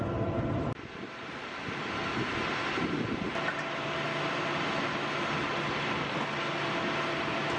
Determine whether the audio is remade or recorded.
recorded